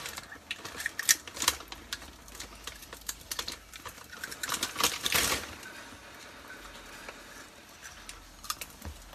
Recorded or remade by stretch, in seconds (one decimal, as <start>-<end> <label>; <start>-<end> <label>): 0.0-2.8 recorded; 2.8-5.8 remade; 5.8-9.1 recorded